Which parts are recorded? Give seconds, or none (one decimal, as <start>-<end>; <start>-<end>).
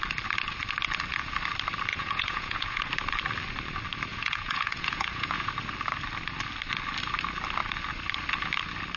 0.0-1.9; 2.8-4.1; 5.5-9.0